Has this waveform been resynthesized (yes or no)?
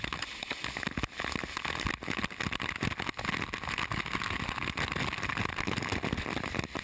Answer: no